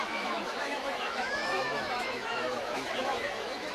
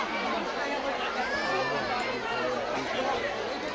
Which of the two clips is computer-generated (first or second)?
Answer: first